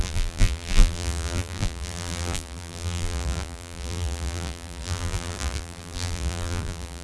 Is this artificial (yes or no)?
yes